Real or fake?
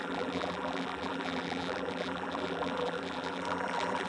fake